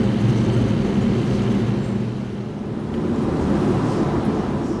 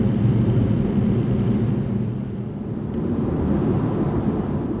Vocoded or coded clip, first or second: second